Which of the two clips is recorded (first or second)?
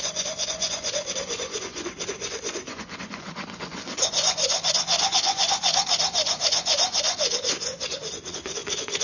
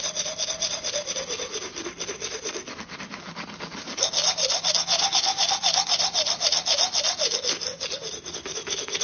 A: second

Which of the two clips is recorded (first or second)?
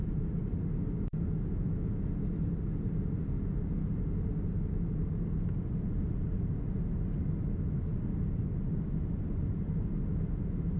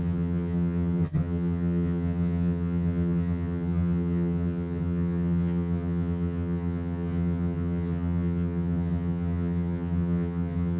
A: first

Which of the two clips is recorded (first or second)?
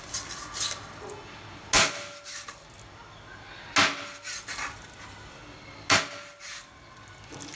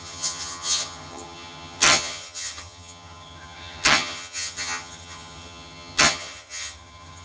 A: first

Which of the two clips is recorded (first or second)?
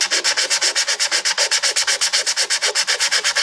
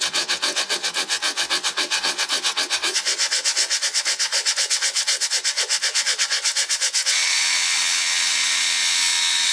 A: first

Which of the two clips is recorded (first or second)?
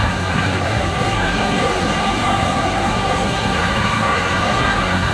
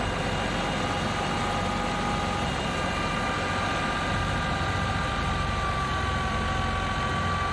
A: second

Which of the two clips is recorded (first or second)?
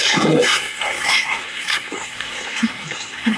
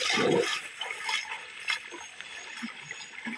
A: second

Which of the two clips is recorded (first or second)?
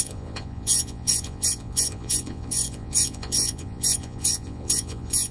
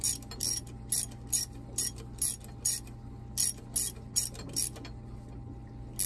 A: second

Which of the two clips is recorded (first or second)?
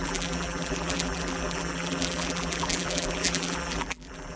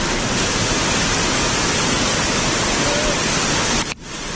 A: second